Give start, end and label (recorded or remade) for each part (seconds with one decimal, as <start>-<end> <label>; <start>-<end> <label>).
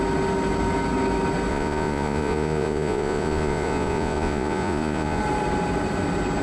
0.0-1.5 recorded; 1.5-5.2 remade; 5.2-6.4 recorded